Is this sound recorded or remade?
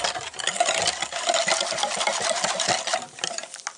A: recorded